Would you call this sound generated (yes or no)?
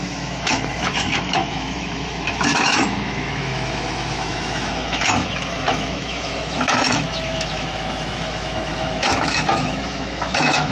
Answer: yes